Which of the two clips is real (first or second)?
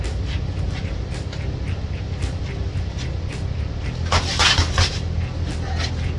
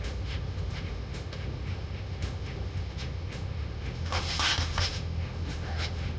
first